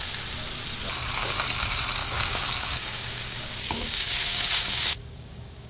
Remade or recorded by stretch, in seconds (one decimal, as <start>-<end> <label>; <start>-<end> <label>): 0.0-2.0 recorded; 2.0-5.7 remade